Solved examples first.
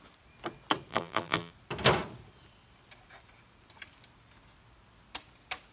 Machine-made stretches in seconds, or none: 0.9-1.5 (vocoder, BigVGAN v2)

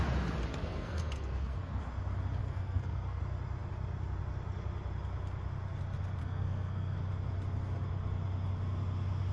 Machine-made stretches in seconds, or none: 0.5-1.8 (codec, SNAC); 2.4-3.2; 6.2-7.0

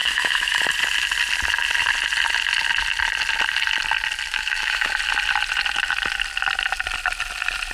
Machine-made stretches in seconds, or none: 0.0-0.6 (autoencoder, DAC-VAE); 4.3-4.9

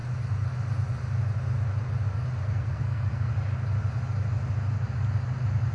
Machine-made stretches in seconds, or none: 2.4-3.3 (codec, SNAC)

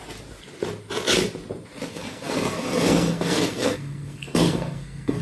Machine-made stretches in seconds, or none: 1.9-5.2 (codec, SNAC)